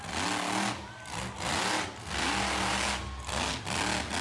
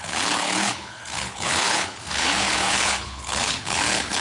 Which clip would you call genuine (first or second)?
first